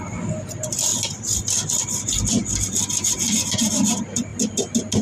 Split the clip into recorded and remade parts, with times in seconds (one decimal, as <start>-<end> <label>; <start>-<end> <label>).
0.0-5.0 recorded